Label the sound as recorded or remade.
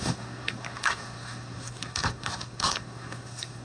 remade